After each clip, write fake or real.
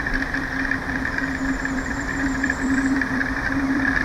fake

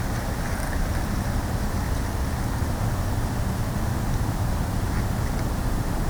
real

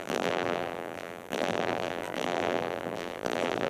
fake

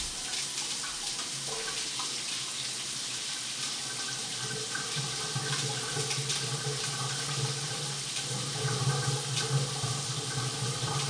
real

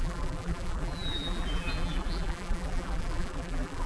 fake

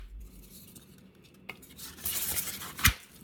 fake